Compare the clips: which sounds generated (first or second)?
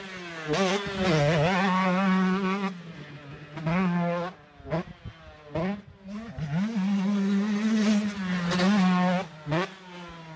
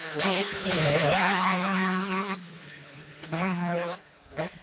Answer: second